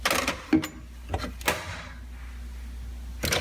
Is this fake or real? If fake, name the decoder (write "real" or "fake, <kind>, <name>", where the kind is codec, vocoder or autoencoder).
real